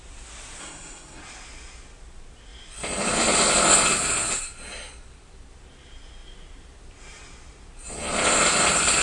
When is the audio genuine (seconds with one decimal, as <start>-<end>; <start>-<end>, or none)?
0.0-0.6; 1.2-9.0